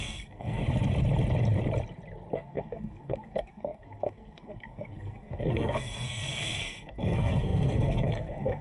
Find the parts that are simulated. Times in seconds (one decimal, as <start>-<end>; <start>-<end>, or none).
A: 0.0-0.6; 2.3-8.6